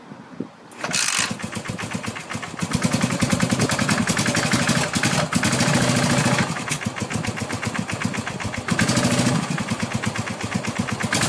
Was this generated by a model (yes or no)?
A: no